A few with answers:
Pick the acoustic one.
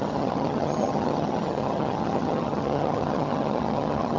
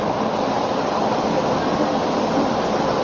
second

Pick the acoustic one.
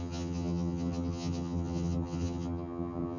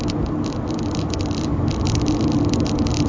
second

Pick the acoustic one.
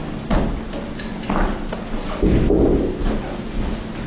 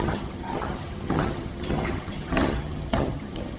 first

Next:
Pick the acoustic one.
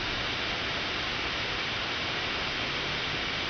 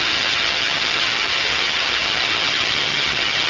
first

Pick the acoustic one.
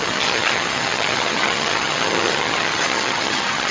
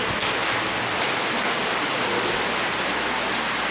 second